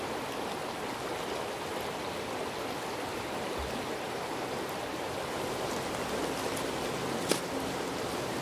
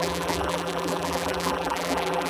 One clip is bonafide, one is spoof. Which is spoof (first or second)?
second